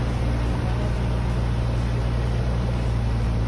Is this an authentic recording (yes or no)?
yes